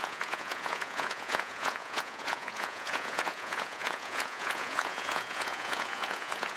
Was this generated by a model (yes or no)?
yes